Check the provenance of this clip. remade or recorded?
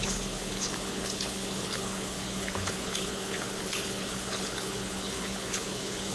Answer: remade